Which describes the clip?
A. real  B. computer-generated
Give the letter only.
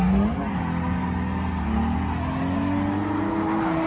A